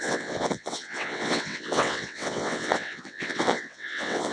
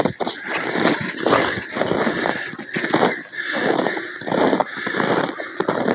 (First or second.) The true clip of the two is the second